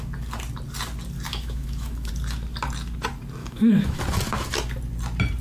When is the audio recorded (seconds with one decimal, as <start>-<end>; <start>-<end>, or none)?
0.0-1.3; 2.1-3.4; 4.0-5.4